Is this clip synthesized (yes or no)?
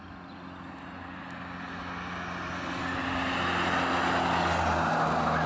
no